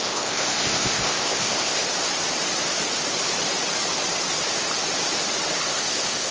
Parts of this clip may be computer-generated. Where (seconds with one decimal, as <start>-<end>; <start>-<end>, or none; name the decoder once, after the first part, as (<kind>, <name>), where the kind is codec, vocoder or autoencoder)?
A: 0.0-1.8 (codec, ZipCodec); 5.6-6.3